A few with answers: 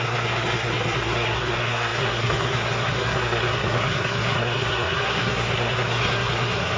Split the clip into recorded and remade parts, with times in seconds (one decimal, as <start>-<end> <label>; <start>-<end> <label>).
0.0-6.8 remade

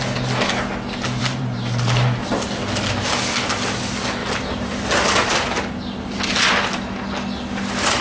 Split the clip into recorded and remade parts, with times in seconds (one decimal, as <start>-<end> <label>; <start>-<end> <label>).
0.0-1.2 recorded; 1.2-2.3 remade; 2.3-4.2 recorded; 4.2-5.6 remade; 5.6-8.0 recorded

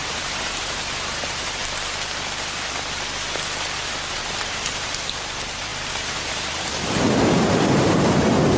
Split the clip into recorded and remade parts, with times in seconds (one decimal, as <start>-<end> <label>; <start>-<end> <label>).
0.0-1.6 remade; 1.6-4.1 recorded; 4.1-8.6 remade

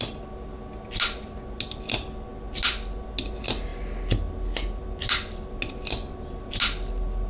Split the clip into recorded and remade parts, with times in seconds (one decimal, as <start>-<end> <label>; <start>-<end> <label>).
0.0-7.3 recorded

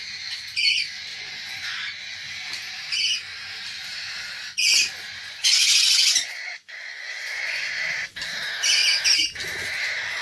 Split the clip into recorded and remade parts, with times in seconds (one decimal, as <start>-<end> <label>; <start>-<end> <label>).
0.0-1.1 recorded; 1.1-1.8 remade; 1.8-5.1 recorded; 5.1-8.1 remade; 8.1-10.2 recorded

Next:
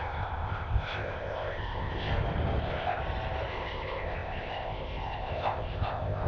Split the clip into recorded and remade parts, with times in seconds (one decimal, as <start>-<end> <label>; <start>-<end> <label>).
0.0-2.1 remade; 2.1-2.6 recorded; 2.6-3.0 remade; 3.0-3.5 recorded; 3.5-6.3 remade

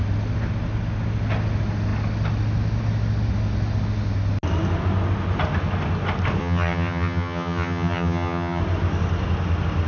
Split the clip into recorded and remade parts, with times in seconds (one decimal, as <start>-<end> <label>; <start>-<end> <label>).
0.0-6.4 recorded; 6.4-8.6 remade; 8.6-9.9 recorded

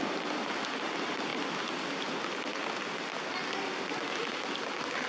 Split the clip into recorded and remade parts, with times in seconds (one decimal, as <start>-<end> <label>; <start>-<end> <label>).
0.0-5.1 recorded